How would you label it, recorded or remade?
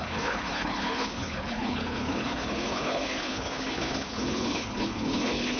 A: remade